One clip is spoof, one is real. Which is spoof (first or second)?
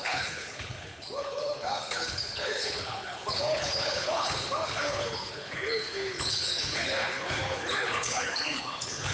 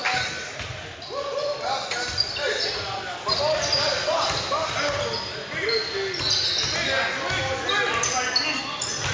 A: first